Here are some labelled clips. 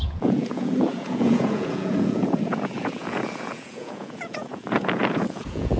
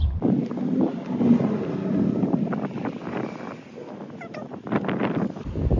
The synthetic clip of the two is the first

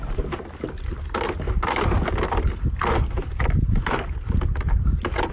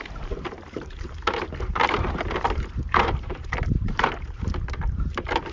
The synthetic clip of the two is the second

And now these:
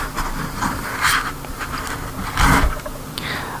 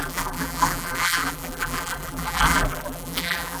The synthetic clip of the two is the second